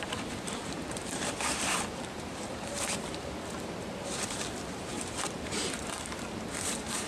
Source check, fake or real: fake